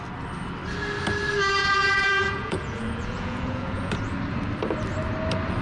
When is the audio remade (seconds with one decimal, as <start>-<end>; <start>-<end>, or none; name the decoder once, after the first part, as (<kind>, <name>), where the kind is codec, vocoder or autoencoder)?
1.6-3.9 (vocoder, Vocos)